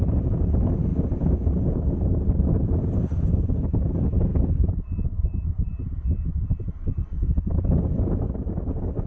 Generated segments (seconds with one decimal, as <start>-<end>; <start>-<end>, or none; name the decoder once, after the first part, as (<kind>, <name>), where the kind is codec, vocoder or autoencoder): none